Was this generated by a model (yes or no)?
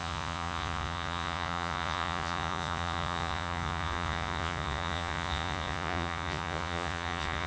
yes